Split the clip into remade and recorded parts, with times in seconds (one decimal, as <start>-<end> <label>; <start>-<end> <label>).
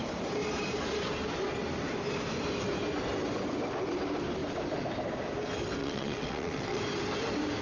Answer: 0.0-5.8 recorded; 5.8-6.8 remade; 6.8-7.6 recorded